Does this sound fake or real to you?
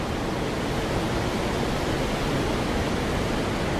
real